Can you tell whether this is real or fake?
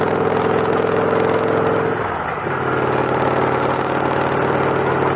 real